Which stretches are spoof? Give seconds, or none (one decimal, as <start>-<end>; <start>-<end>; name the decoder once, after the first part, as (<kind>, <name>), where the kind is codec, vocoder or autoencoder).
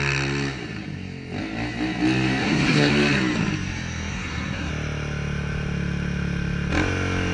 2.4-2.9 (codec, SNAC); 4.1-4.7